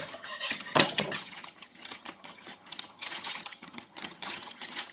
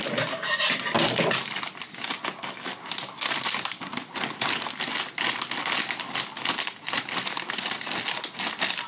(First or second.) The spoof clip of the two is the first